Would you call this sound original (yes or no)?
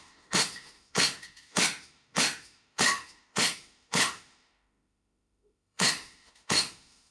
no